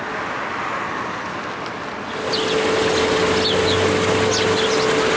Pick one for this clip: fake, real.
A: real